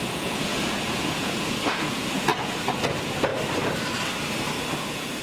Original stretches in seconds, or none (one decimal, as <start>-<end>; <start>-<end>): 2.3-2.9; 3.3-4.6

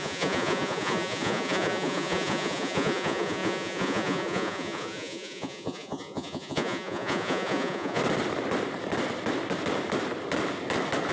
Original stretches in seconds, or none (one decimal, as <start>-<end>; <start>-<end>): 8.0-11.1